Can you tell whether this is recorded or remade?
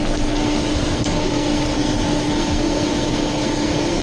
remade